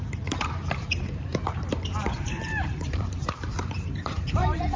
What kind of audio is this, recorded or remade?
remade